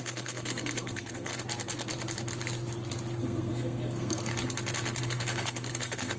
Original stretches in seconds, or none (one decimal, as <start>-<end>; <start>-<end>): 1.3-3.2; 4.3-5.0